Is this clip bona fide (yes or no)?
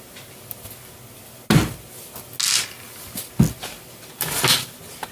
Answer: yes